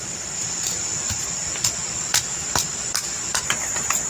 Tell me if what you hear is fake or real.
real